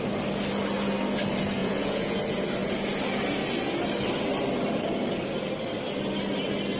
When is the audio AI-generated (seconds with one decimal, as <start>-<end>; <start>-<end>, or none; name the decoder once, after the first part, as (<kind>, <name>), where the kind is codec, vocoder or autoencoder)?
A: 1.6-2.2 (vocoder, Vocos)